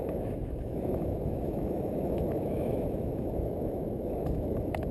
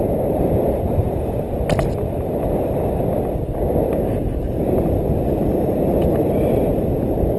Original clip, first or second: second